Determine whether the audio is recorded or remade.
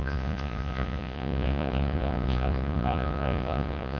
remade